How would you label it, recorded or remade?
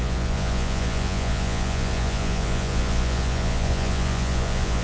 remade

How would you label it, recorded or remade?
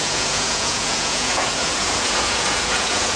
remade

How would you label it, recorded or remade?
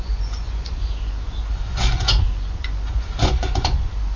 remade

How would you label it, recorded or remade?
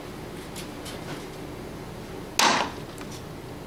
recorded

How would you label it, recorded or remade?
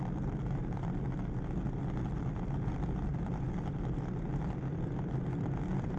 recorded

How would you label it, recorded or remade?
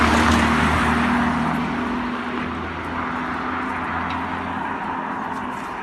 recorded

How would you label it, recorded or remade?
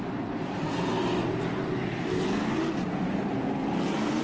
recorded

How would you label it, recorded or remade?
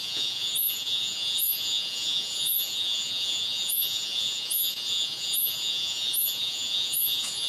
remade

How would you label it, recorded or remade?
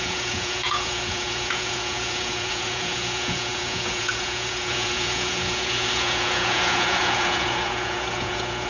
remade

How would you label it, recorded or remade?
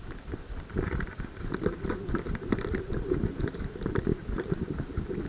recorded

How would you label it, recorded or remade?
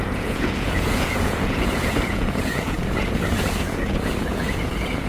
remade